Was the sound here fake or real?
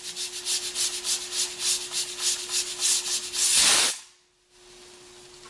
real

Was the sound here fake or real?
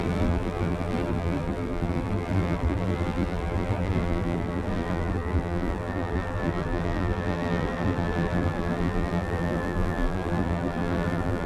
fake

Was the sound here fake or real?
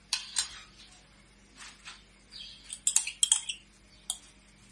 real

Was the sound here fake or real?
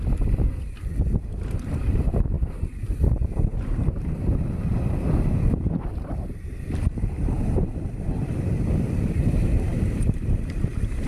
fake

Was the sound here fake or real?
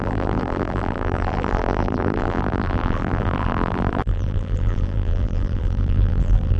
fake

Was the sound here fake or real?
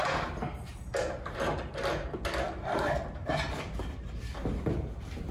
real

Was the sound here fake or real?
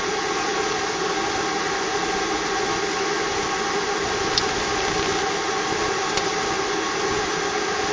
real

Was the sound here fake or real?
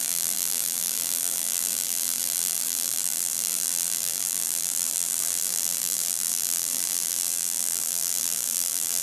fake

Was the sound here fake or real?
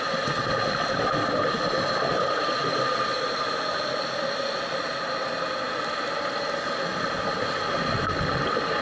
real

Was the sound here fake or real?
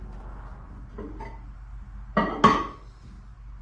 real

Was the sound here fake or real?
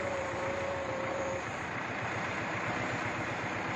fake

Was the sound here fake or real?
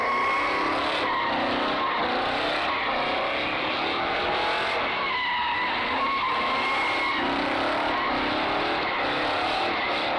real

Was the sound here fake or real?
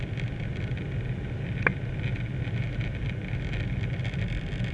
real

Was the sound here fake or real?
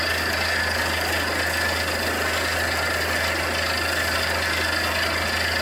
real